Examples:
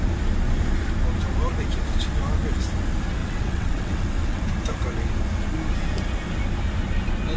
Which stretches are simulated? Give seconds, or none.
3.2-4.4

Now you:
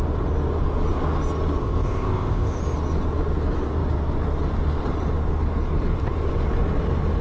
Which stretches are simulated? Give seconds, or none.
1.6-2.6

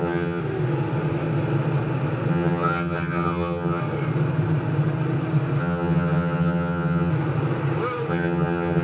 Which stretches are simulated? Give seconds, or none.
0.0-0.4; 2.3-3.8; 5.6-7.1; 8.1-8.8

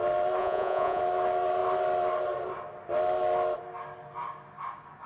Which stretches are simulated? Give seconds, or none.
0.4-1.0

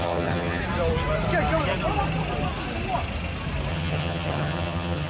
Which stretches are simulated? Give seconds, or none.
0.0-0.6; 3.7-5.1

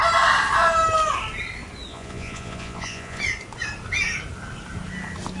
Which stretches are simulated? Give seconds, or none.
1.9-3.2

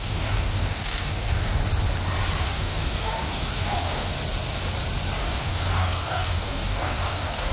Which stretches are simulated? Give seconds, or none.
0.0-1.6; 2.4-4.1; 5.2-7.5